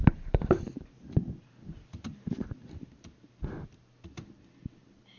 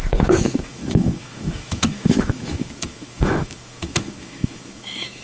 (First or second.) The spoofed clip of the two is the second